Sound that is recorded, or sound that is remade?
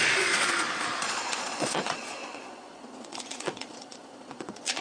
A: remade